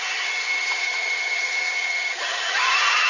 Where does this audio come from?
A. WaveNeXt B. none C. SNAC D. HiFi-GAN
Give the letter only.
D